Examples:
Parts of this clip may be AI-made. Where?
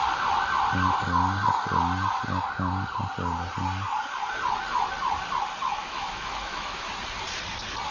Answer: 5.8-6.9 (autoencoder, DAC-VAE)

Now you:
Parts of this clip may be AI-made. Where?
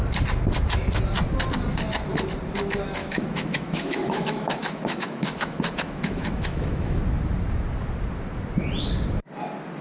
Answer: 3.0-7.0 (autoencoder, DAC-VAE)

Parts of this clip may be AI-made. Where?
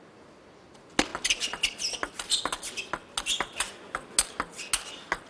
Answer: none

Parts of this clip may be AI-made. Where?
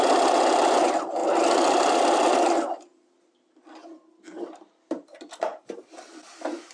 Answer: none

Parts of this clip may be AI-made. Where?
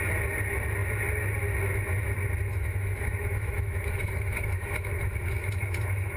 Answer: 2.5-6.2 (autoencoder, DAC-VAE)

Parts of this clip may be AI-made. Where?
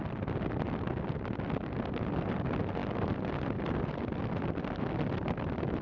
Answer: none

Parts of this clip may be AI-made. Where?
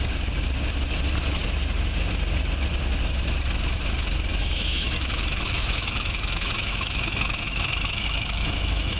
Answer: 4.3-9.0 (autoencoder, DAC-VAE)